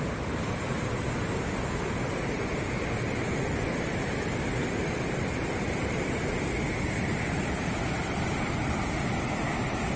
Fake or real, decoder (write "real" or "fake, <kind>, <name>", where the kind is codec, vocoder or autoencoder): real